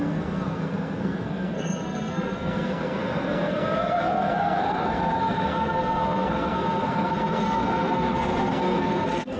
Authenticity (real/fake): fake